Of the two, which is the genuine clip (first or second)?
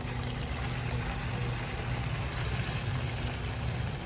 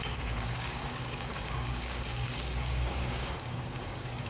first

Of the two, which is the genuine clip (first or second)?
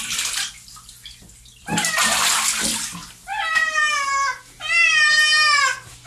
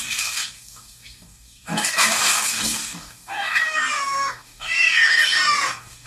first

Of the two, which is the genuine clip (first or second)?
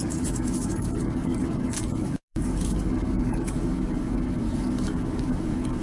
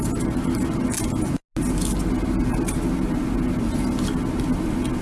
second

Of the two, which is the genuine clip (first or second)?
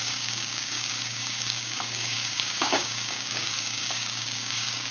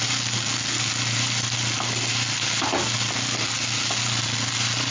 second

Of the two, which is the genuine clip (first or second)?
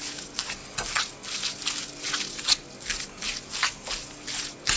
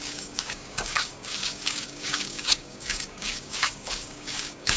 first